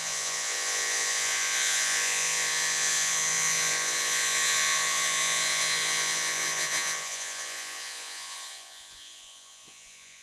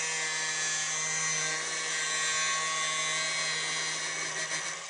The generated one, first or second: first